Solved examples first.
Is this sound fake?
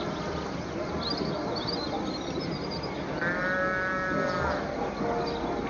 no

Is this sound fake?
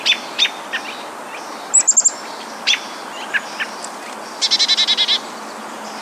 no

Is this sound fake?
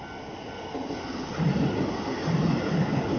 no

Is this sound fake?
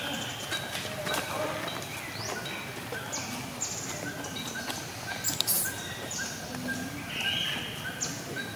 no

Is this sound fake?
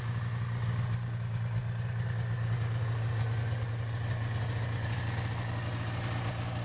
no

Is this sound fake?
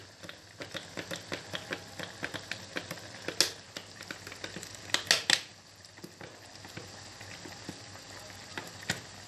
no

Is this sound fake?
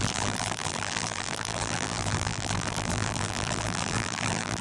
yes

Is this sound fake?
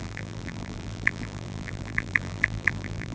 yes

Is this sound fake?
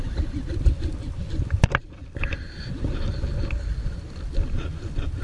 no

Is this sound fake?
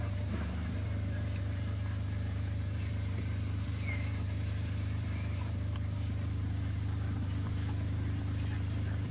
yes